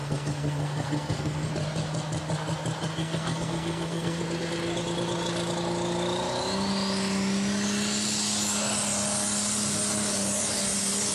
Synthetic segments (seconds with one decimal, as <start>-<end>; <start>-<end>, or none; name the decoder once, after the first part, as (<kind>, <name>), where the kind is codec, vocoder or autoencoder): 0.0-1.5 (codec, SNAC); 3.0-4.2